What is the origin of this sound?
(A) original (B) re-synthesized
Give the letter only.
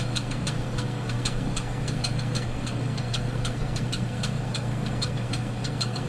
B